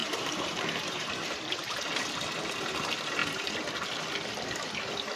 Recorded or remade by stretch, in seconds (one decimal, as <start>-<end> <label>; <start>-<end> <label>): 0.0-1.1 remade; 1.1-5.2 recorded